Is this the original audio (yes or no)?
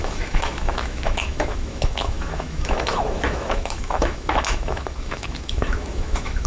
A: no